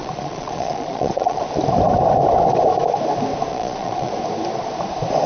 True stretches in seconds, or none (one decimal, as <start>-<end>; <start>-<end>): 1.4-3.5; 4.1-5.3